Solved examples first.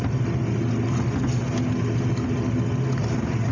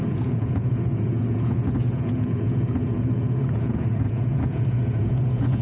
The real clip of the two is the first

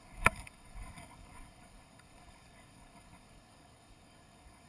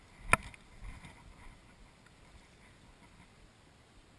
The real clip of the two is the second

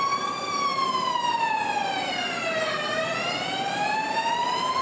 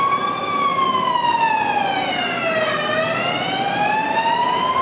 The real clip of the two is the second